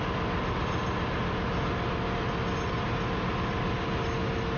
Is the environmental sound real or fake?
real